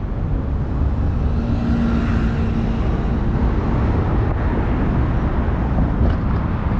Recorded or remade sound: recorded